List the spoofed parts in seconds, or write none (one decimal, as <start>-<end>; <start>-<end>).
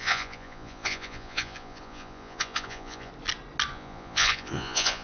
0.0-3.1; 3.7-5.0